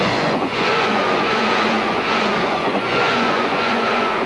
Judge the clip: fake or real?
fake